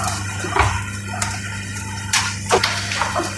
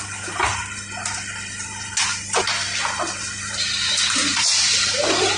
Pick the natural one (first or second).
second